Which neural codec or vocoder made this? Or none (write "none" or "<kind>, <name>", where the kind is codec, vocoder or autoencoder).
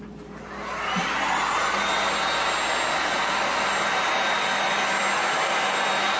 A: none